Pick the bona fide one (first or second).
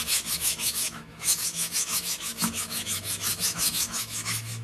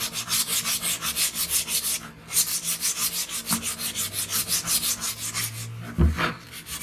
second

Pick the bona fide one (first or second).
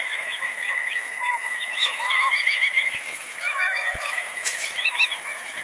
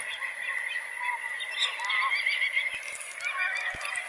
second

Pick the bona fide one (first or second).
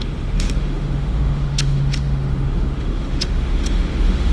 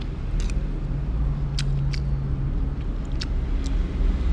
second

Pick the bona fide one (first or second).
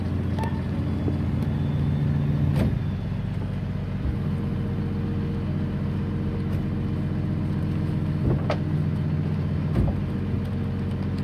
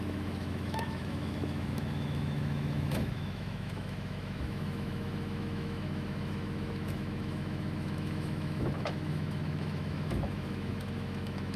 first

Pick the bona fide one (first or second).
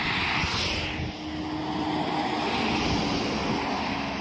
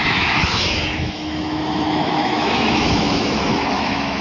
first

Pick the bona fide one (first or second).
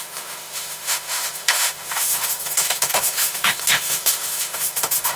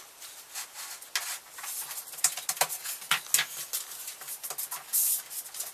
second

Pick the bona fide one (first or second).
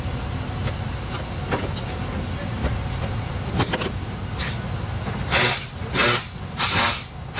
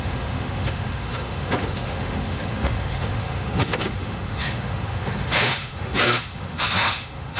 first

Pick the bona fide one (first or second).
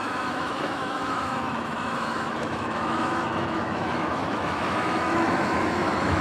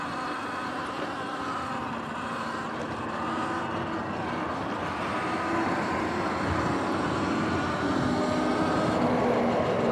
second